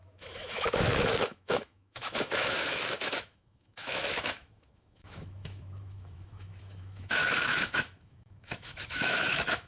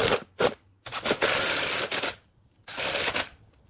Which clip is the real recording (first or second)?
second